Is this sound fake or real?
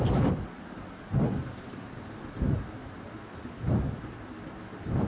real